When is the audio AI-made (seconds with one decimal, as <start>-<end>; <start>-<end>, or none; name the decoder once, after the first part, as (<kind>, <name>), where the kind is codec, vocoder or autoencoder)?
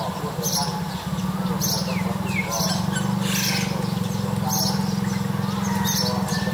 none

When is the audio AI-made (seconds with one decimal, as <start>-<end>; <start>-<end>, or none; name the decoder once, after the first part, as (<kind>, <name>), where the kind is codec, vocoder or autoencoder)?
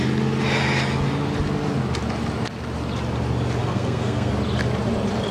3.6-4.3 (codec, SNAC)